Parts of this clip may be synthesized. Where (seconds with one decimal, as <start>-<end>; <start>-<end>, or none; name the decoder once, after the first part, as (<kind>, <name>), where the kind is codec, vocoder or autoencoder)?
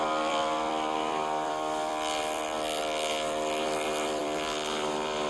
0.0-5.3 (vocoder, BigVGAN v2)